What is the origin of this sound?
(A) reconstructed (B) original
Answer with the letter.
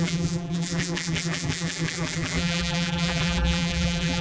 A